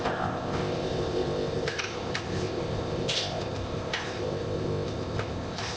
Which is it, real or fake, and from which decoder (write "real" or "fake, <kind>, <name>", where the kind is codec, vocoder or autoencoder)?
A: fake, codec, ZipCodec